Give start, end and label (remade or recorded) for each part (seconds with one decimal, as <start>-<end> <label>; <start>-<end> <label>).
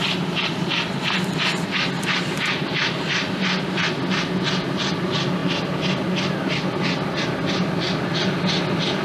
0.0-9.0 recorded